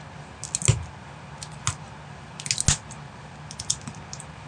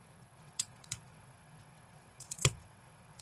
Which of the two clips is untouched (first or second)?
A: first